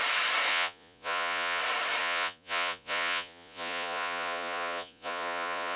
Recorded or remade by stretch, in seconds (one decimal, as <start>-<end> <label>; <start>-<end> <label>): 0.0-0.5 recorded; 0.5-1.6 remade; 1.6-2.0 recorded; 2.0-5.8 remade